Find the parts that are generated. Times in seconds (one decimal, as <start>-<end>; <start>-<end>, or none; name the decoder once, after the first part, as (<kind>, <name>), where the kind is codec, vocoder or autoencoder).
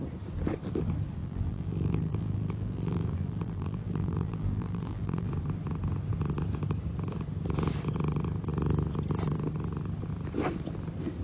1.2-5.3 (vocoder, BigVGAN v2)